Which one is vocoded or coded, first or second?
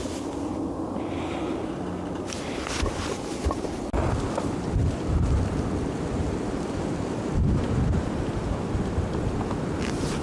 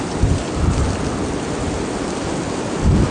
first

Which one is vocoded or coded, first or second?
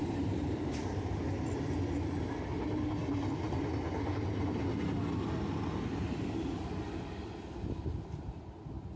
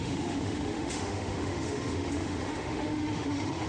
second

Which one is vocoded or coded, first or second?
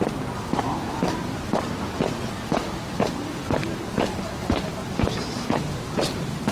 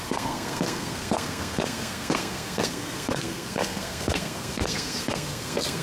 second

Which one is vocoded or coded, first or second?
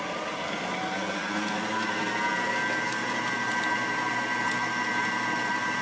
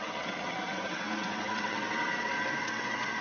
second